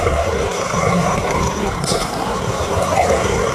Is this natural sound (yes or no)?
no